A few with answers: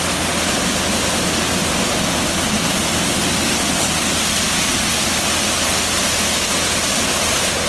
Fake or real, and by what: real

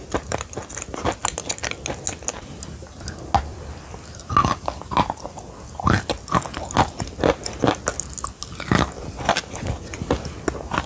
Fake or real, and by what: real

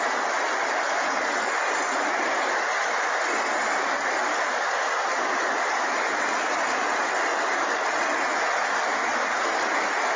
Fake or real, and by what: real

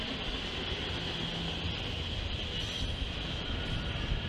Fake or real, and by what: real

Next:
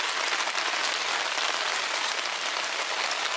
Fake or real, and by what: real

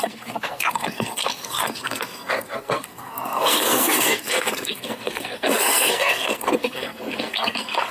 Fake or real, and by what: fake, codec, SNAC